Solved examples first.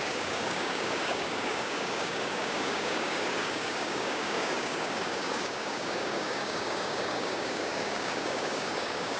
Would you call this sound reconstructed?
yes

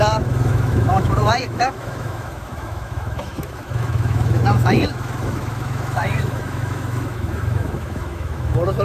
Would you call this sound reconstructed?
yes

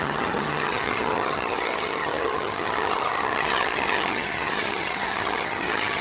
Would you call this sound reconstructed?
yes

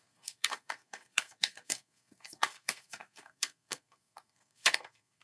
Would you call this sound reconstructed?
yes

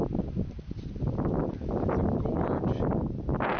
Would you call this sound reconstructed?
no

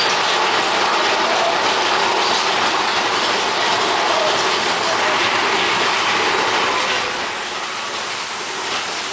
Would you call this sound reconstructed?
no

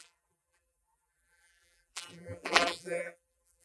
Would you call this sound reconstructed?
yes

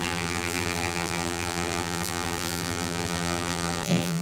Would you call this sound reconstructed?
yes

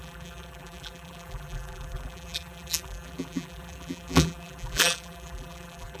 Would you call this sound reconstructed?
yes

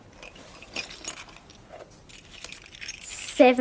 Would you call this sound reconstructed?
no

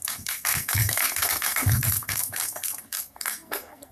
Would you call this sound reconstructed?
yes